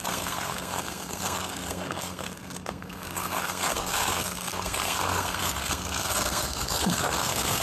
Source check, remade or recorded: remade